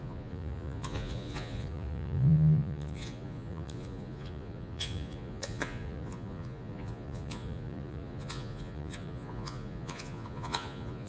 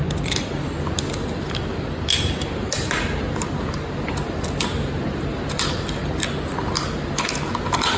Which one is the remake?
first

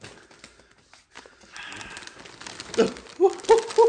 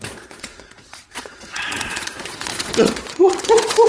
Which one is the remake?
second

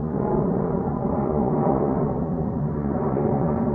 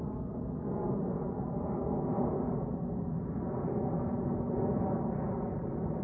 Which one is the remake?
first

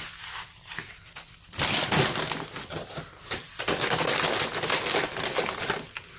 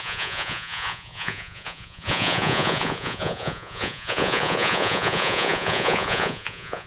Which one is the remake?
second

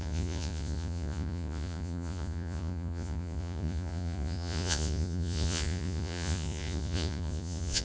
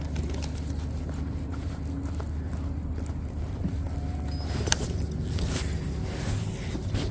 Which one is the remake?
first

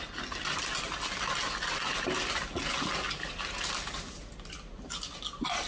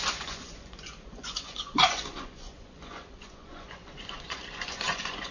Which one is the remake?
second